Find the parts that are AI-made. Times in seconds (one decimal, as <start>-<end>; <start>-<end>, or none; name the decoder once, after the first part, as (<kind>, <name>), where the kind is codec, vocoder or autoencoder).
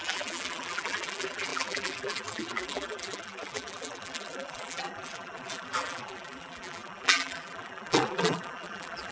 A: 0.0-9.1 (vocoder, BigVGAN v2)